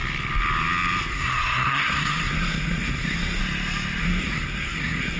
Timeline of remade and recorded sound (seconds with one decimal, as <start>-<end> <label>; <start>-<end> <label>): 0.0-1.1 recorded; 1.1-3.4 remade; 3.4-4.0 recorded; 4.0-5.2 remade